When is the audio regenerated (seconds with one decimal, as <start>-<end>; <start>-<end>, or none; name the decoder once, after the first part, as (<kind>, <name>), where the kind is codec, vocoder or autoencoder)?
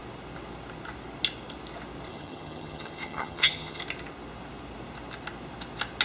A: 2.1-3.8 (vocoder, HiFi-GAN)